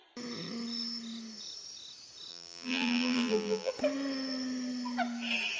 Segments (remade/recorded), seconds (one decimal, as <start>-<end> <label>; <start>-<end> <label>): 0.0-2.3 recorded; 2.3-3.7 remade; 3.7-5.6 recorded